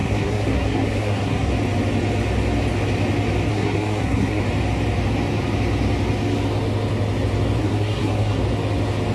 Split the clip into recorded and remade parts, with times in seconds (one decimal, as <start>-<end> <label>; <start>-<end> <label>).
0.0-1.5 remade; 1.5-3.5 recorded; 3.5-4.4 remade; 4.4-7.6 recorded; 7.6-8.4 remade; 8.4-9.1 recorded

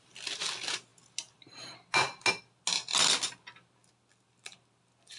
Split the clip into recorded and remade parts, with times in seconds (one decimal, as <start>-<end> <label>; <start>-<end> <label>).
0.0-5.2 recorded

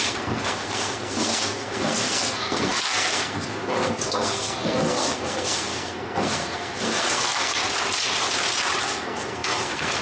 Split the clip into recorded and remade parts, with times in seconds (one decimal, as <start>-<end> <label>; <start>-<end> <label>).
0.0-7.6 remade; 7.6-8.8 recorded; 8.8-10.0 remade

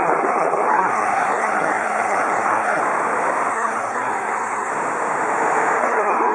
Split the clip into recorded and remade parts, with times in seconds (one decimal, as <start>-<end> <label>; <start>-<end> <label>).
0.0-2.8 remade; 2.8-3.5 recorded; 3.5-4.7 remade; 4.7-5.8 recorded; 5.8-6.3 remade

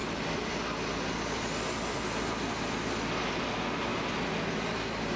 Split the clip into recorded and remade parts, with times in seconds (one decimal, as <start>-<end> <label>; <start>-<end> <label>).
0.0-5.2 recorded

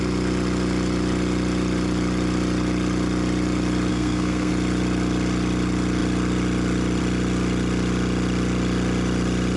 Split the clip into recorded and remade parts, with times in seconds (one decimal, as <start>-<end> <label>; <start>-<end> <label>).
0.0-3.9 recorded; 3.9-4.5 remade; 4.5-9.6 recorded